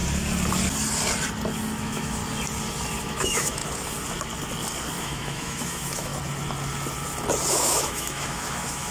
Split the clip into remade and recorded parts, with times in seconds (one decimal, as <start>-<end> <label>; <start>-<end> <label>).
0.0-1.8 recorded; 1.8-2.2 remade; 2.2-3.0 recorded; 3.0-3.6 remade; 3.6-5.0 recorded; 5.0-6.1 remade; 6.1-7.5 recorded; 7.5-8.9 remade